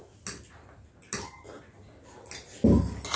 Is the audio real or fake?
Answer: real